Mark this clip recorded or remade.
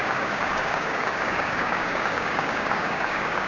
remade